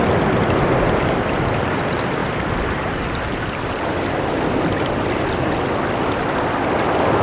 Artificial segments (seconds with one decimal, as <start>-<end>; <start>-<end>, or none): none